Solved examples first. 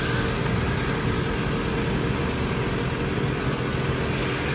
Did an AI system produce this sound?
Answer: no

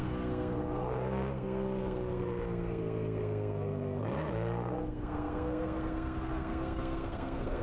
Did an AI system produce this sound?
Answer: yes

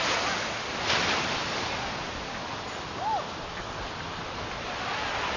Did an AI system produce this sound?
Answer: no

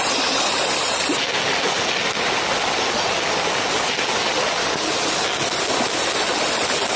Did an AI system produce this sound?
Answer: no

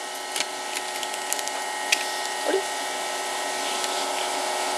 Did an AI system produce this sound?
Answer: no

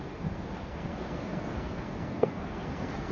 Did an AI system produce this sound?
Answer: yes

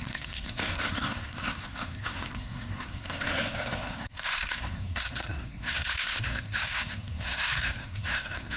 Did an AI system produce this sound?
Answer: yes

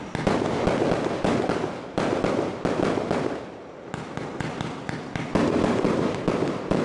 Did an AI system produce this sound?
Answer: no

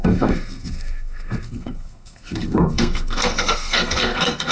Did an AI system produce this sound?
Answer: yes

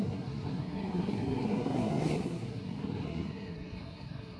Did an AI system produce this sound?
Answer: yes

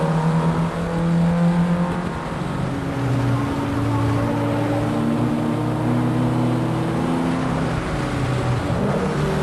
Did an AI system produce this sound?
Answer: no